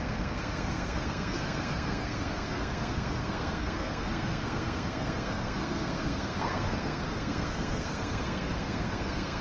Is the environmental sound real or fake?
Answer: fake